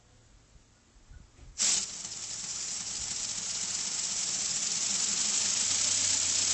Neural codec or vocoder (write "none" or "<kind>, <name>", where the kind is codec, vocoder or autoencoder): none